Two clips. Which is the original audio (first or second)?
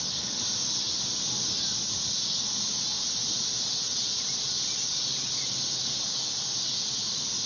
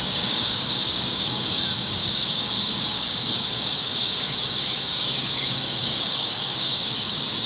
first